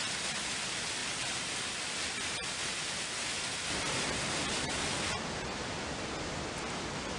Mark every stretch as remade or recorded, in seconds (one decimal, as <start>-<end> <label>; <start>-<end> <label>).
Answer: 0.0-1.0 recorded; 1.0-1.7 remade; 1.7-3.6 recorded; 3.6-4.1 remade; 4.1-7.2 recorded